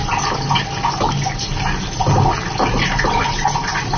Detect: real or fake real